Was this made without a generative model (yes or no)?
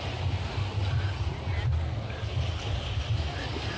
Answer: yes